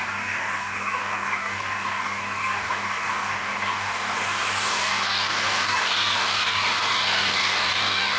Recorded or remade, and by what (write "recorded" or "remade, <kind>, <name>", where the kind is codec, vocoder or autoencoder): remade, codec, DAC